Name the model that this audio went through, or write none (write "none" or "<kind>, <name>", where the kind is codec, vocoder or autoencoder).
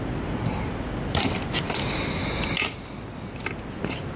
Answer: none